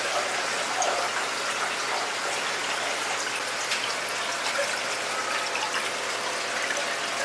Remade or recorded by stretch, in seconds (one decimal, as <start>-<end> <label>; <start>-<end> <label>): 0.0-7.2 recorded